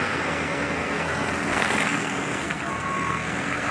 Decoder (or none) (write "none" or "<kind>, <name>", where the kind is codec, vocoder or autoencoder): codec, SNAC